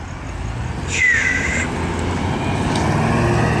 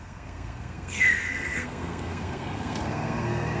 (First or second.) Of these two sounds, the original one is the first